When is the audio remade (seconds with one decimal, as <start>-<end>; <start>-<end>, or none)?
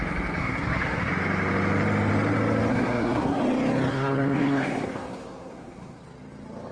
0.4-1.1; 2.7-3.4; 3.9-6.0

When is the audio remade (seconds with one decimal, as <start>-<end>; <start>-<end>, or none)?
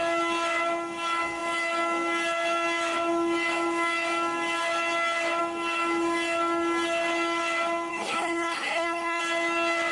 7.9-9.2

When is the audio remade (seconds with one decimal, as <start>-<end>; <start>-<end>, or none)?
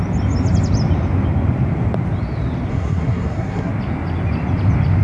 2.7-3.7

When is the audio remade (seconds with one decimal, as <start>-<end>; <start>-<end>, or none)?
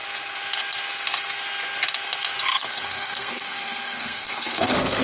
2.5-5.0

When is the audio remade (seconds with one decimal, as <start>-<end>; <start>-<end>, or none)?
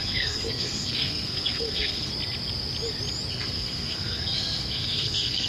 0.0-2.1; 3.3-5.5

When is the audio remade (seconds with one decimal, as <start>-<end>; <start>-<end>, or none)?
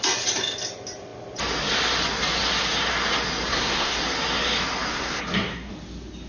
3.5-4.0; 4.9-5.7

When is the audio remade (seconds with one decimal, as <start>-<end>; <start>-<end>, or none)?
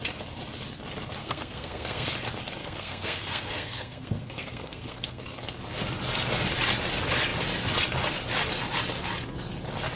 1.2-2.1; 2.6-5.2